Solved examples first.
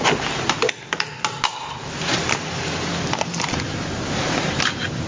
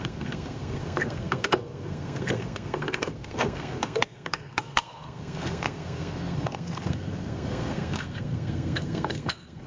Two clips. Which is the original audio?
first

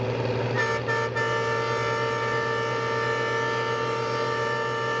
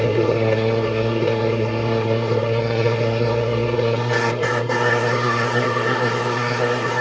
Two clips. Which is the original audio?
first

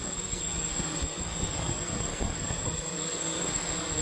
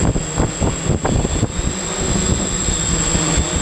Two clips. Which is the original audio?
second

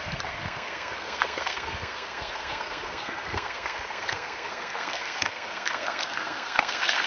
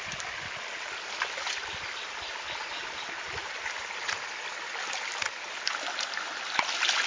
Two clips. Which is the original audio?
second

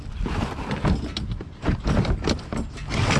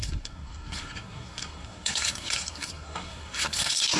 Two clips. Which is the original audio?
first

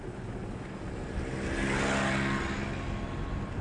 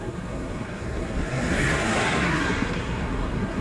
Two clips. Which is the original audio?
first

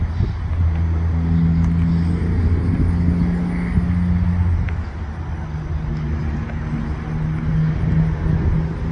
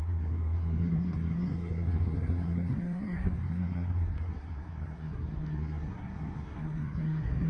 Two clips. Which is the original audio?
first